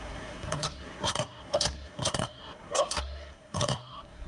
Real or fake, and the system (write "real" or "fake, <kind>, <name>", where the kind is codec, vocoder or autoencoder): fake, codec, SNAC